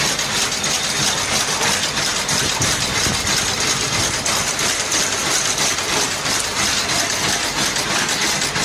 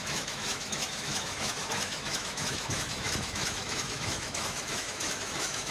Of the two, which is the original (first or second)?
first